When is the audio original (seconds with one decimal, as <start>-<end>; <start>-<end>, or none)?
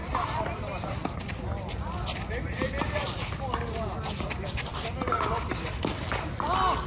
2.7-4.7; 6.2-6.9